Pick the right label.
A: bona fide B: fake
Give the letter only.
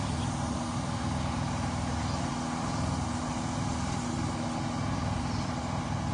A